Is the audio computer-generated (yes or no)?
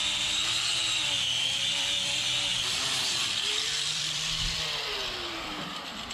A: yes